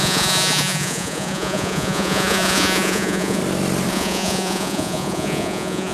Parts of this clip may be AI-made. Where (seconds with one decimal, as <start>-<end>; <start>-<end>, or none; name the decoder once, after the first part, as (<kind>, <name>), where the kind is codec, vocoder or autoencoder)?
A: 0.0-3.4 (vocoder, Vocos); 3.9-5.9